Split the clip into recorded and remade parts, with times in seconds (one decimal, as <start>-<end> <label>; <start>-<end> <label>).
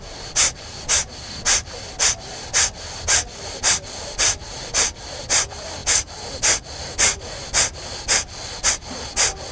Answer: 0.0-9.5 recorded